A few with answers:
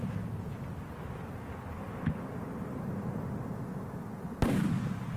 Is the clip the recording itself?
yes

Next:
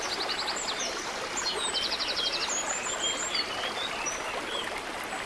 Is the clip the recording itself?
yes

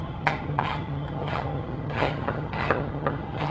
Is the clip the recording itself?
no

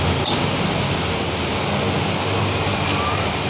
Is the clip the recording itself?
yes